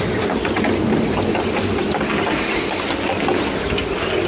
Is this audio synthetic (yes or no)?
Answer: no